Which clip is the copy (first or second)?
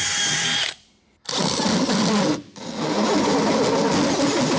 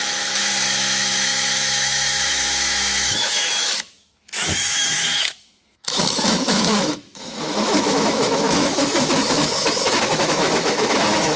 second